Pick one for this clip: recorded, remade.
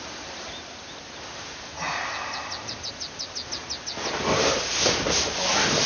recorded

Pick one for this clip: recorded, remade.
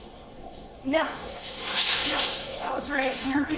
remade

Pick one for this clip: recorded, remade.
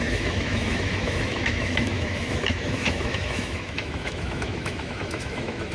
remade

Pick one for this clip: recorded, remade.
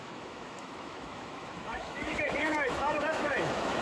remade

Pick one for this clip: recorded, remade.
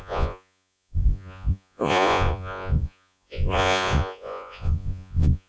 remade